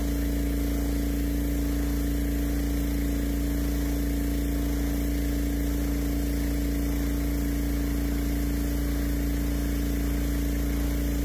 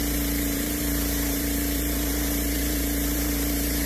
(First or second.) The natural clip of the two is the first